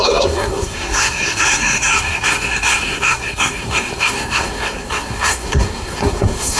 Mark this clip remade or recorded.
remade